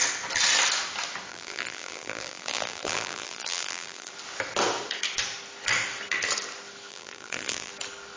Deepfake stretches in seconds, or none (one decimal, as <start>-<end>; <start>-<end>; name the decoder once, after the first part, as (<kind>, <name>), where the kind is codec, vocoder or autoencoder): 1.3-4.1 (vocoder, BigVGAN v2); 6.9-7.7